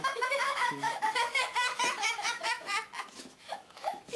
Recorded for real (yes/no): no